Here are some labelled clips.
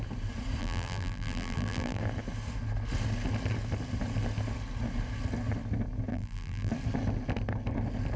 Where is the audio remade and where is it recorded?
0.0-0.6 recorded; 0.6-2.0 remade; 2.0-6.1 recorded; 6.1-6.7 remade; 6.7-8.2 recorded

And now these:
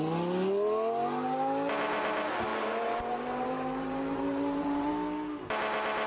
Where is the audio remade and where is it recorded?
0.0-2.5 recorded; 2.5-4.9 remade; 4.9-6.1 recorded

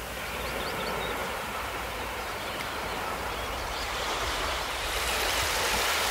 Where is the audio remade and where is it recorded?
0.0-1.2 recorded; 1.2-4.9 remade; 4.9-6.1 recorded

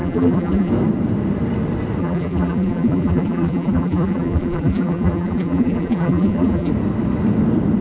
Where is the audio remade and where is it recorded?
0.0-0.7 remade; 0.7-2.0 recorded; 2.0-6.7 remade; 6.7-7.8 recorded